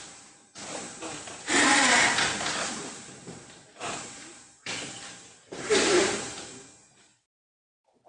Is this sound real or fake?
fake